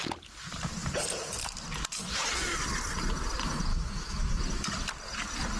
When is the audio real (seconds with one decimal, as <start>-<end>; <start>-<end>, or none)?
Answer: 0.0-3.7; 4.4-5.6